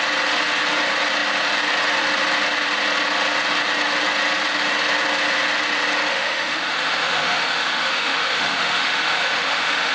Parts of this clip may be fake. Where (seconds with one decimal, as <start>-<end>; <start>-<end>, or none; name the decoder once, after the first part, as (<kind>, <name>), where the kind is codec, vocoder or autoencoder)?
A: 6.1-9.9 (autoencoder, DAC-VAE)